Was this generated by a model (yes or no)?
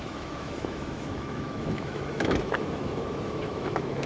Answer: yes